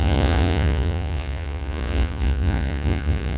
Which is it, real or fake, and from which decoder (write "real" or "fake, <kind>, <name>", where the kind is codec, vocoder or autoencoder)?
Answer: fake, vocoder, Vocos